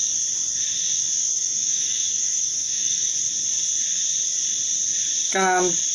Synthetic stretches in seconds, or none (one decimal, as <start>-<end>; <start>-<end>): 1.2-3.1